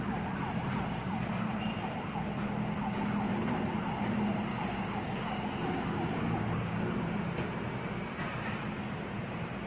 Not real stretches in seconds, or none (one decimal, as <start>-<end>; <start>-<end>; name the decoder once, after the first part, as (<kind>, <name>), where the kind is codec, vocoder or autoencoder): 4.5-6.8 (codec, DAC)